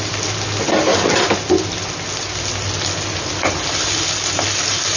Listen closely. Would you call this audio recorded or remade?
recorded